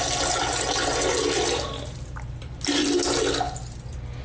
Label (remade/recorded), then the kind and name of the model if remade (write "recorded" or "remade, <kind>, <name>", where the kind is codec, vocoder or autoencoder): recorded